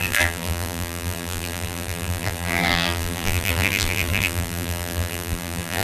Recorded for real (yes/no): no